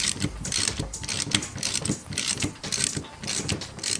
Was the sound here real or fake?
real